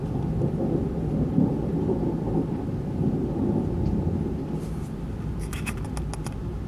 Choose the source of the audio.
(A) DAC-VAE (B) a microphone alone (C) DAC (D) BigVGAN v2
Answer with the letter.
B